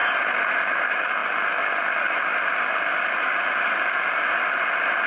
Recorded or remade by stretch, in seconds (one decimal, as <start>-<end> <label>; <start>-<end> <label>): 0.0-0.6 remade; 0.6-5.1 recorded